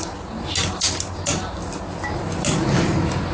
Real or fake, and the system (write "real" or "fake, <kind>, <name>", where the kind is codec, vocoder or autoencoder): real